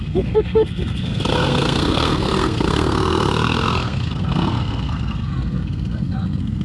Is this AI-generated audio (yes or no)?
yes